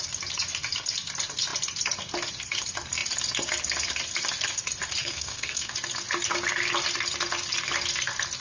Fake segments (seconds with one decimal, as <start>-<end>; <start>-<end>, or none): 5.0-5.7